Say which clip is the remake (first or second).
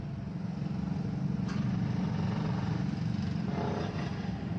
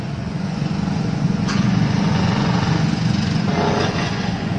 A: second